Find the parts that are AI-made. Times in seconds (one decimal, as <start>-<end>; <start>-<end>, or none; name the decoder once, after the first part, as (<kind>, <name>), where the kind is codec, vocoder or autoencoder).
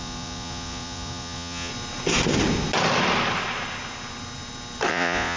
0.0-1.7 (vocoder, Vocos); 4.9-5.4